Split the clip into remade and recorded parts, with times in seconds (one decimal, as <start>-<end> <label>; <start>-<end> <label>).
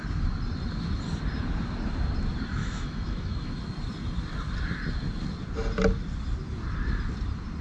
0.0-2.6 recorded; 2.6-3.5 remade; 3.5-7.6 recorded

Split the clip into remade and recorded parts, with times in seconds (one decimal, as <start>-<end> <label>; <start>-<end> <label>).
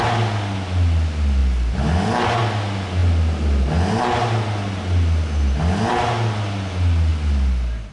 0.0-7.9 recorded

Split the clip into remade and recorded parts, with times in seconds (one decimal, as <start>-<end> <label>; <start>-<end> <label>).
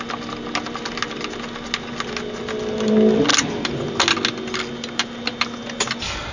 0.0-6.3 recorded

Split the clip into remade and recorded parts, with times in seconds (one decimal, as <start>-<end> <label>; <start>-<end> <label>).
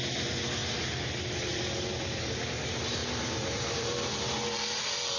0.0-3.0 recorded; 3.0-4.2 remade; 4.2-5.2 recorded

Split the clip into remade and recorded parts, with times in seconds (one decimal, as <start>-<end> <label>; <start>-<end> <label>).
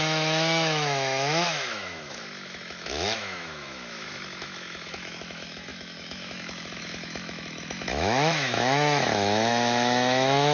0.0-10.5 remade